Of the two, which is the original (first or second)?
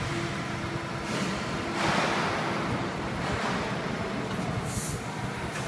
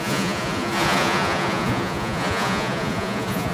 first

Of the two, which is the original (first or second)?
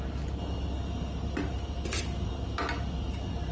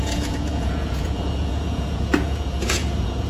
first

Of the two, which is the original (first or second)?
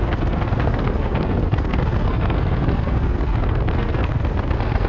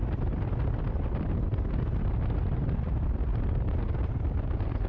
second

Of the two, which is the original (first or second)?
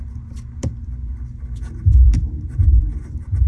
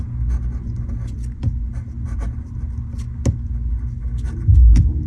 second